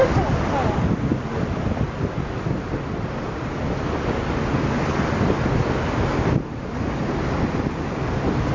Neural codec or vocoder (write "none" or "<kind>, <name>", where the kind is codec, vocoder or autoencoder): none